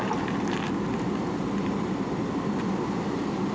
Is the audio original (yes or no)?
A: yes